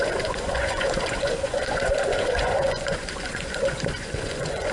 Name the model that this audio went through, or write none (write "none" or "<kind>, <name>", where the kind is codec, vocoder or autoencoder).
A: vocoder, Vocos